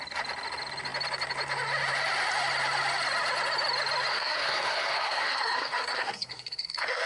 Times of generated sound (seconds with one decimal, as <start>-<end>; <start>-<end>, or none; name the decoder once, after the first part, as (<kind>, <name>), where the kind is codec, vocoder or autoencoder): 4.1-7.1 (codec, SNAC)